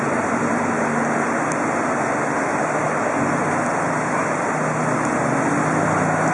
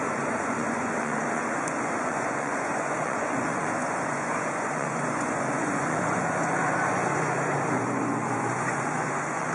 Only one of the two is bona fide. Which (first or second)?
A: first